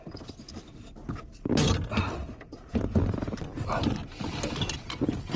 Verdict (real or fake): real